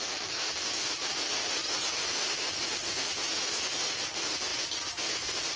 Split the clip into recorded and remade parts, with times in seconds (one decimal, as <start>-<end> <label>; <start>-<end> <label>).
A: 0.0-1.6 remade; 1.6-2.4 recorded; 2.4-5.6 remade